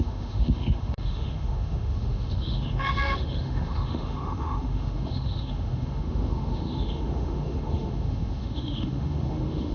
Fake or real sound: fake